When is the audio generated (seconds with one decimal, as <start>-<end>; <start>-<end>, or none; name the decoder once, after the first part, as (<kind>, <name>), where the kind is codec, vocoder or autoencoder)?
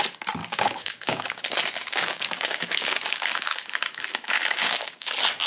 0.4-1.4 (codec, DAC); 1.8-5.1